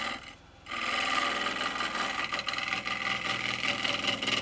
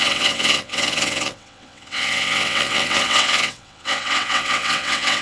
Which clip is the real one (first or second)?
first